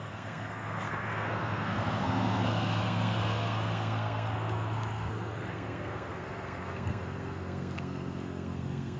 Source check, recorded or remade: remade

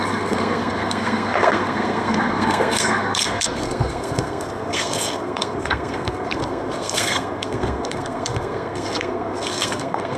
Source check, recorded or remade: remade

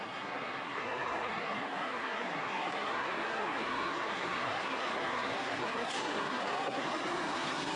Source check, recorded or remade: remade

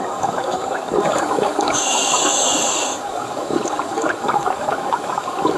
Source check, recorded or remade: remade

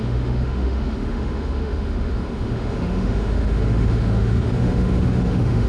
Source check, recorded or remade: remade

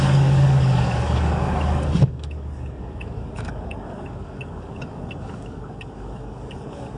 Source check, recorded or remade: remade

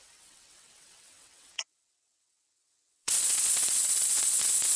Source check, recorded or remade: remade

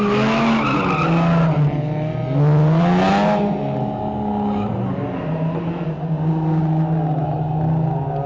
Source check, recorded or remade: recorded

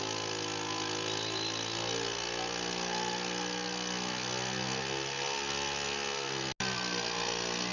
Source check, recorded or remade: recorded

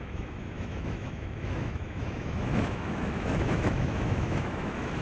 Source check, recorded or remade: remade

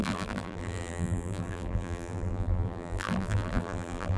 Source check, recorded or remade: remade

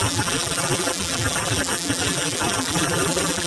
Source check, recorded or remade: remade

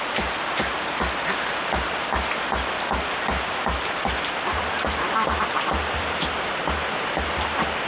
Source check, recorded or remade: recorded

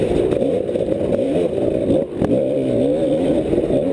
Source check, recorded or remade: recorded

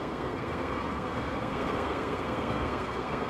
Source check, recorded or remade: remade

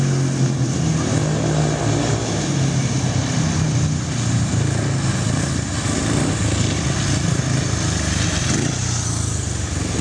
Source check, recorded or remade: recorded